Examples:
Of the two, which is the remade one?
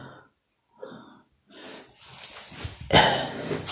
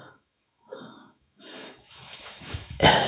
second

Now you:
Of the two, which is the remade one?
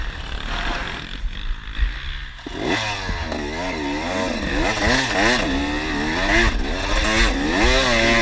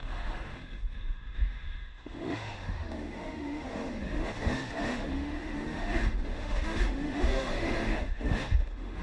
second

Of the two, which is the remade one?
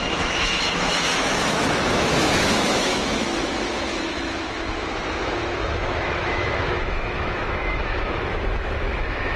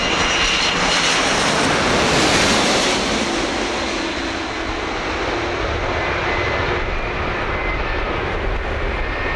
first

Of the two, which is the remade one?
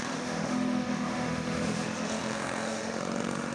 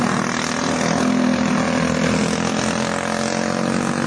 first